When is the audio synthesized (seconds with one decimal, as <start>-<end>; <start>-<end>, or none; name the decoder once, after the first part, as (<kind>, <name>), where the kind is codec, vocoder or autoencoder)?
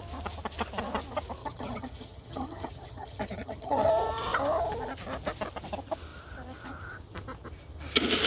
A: 1.4-3.9 (vocoder, HiFi-GAN)